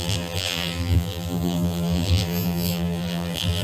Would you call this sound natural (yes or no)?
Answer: no